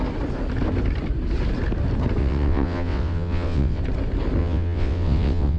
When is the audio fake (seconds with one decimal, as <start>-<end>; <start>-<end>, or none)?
2.2-3.8; 4.4-5.6